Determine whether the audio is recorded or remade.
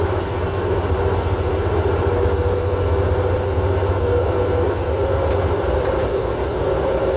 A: recorded